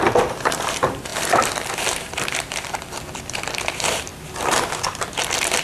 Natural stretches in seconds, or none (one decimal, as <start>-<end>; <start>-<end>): 4.1-5.0